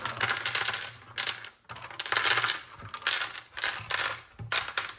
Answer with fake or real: real